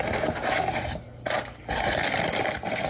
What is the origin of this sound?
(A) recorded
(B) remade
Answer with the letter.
A